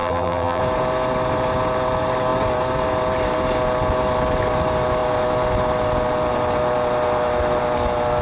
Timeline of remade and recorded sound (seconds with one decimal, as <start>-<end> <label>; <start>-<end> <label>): 0.0-0.6 remade; 0.6-8.2 recorded